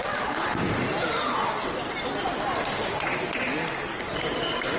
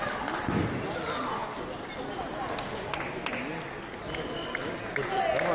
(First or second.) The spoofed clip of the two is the first